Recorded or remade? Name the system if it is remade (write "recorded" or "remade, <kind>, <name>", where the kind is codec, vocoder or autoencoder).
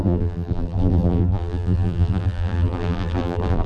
remade, vocoder, BigVGAN v2